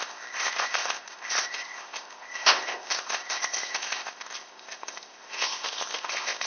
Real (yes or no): no